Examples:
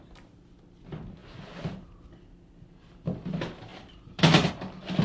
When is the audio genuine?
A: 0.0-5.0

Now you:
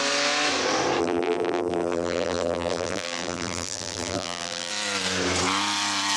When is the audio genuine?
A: 0.0-1.0; 4.7-6.2

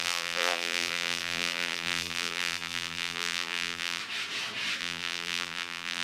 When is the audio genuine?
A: 4.0-4.8

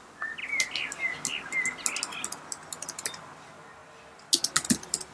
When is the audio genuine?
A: 0.0-5.1

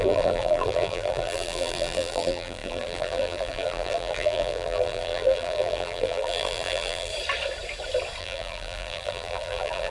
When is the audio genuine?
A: 7.1-8.2

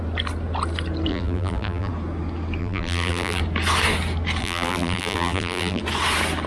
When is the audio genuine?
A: 0.0-1.1; 1.9-2.6; 3.4-4.4; 5.8-6.5

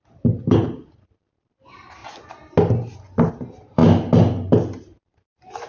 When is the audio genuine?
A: 2.0-3.3; 3.8-4.8

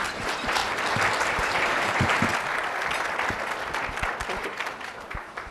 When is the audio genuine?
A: 0.6-1.2; 2.3-4.7